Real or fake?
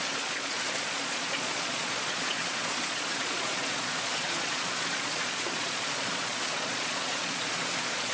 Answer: fake